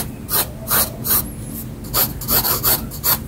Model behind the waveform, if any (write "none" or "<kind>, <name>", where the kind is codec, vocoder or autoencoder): none